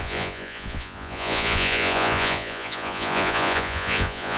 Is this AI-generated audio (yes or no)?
yes